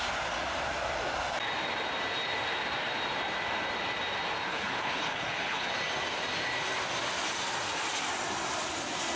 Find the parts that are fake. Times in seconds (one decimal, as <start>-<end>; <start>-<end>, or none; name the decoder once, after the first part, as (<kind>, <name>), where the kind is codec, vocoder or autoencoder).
4.5-5.7 (codec, HILCodec)